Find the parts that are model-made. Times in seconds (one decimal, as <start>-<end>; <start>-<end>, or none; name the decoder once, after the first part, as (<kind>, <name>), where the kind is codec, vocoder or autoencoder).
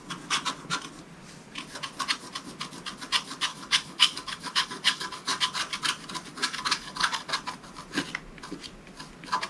3.5-5.4 (codec, DAC); 6.4-7.3